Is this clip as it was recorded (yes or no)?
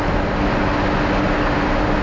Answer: yes